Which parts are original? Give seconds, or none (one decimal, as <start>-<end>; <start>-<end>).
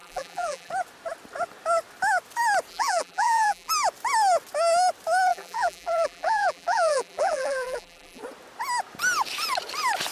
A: 0.7-2.7; 3.7-5.3; 8.2-10.1